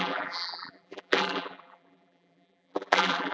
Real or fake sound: fake